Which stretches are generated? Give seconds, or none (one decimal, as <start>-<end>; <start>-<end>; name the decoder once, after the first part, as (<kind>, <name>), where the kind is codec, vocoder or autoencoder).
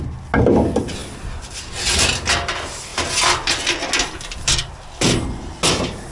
none